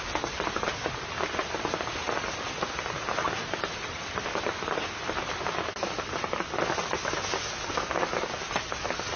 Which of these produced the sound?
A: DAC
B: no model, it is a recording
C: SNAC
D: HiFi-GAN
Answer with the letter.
B